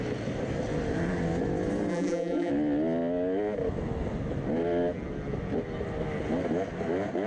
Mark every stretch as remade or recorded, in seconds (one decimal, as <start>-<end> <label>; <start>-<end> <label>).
0.0-1.9 recorded; 1.9-2.5 remade; 2.5-7.3 recorded